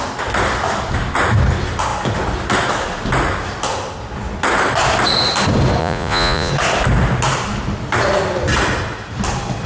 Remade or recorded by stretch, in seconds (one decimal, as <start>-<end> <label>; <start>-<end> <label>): 0.0-5.8 recorded; 5.8-6.5 remade; 6.5-9.7 recorded